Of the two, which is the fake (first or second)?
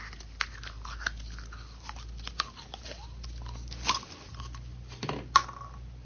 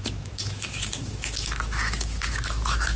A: second